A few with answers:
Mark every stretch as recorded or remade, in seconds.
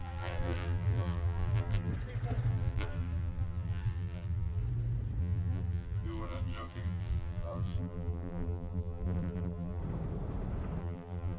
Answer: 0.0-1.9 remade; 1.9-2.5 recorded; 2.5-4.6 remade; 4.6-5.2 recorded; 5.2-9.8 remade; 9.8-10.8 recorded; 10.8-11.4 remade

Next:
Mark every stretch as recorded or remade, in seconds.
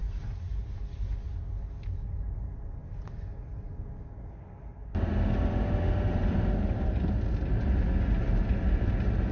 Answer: 0.0-9.3 recorded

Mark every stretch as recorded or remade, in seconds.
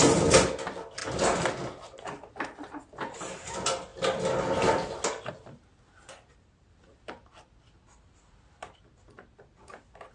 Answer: 0.0-10.1 recorded